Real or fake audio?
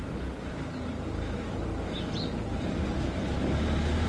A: real